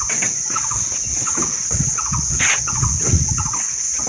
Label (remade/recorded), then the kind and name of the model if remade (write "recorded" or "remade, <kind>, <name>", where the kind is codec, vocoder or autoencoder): remade, vocoder, WaveNeXt